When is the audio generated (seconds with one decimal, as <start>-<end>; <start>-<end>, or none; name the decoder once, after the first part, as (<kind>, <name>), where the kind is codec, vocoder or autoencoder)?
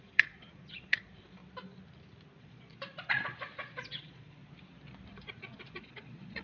0.0-1.4 (vocoder, Vocos); 2.4-4.4; 5.1-6.4